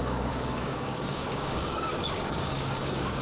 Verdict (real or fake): fake